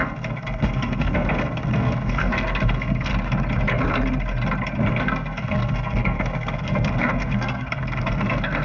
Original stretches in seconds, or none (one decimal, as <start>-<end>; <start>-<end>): 3.1-4.9